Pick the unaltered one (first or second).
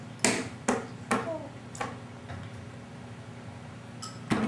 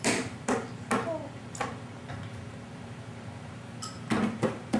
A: first